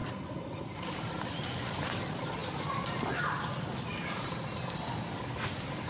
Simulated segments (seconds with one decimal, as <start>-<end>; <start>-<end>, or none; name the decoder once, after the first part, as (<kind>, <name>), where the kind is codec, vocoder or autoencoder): none